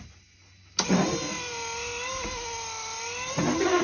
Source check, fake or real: real